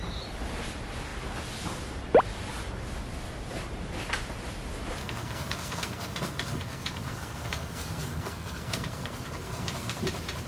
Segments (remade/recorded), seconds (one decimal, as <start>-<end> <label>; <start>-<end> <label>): 0.0-5.0 recorded; 5.0-10.0 remade; 10.0-10.5 recorded